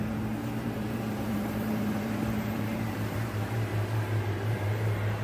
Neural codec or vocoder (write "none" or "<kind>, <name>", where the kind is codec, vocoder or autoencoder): vocoder, BigVGAN v2